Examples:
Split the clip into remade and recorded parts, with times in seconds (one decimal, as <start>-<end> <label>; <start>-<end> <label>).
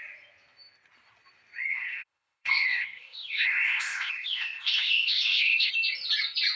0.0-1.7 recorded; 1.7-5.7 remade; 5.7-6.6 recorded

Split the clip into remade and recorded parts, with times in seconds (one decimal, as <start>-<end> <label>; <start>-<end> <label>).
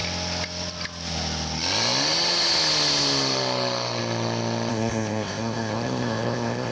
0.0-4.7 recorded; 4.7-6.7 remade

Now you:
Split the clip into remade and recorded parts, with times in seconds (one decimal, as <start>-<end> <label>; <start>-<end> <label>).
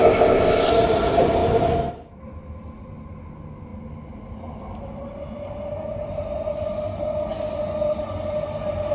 0.0-0.7 remade; 0.7-8.9 recorded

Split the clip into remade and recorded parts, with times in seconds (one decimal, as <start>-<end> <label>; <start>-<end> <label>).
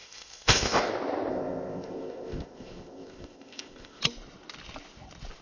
0.0-0.9 remade; 0.9-1.3 recorded; 1.3-4.0 remade; 4.0-5.4 recorded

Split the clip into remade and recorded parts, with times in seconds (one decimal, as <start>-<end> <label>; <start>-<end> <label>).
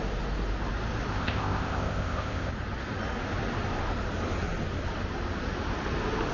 0.0-1.1 recorded; 1.1-2.5 remade; 2.5-6.3 recorded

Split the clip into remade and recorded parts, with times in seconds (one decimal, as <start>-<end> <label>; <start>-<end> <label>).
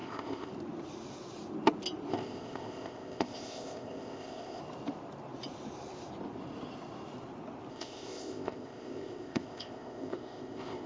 0.0-0.5 remade; 0.5-2.1 recorded; 2.1-4.6 remade; 4.6-7.7 recorded; 7.7-10.9 remade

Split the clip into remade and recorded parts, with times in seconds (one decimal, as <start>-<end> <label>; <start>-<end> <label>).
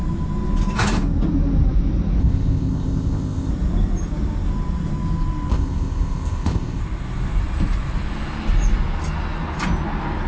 0.0-2.2 recorded; 2.2-3.5 remade; 3.5-5.5 recorded; 5.5-6.8 remade; 6.8-10.3 recorded